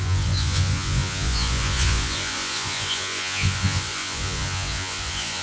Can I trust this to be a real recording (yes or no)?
no